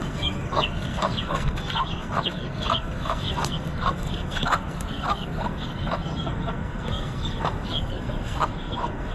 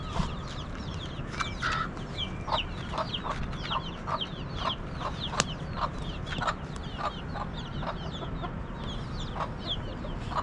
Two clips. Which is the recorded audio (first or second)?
second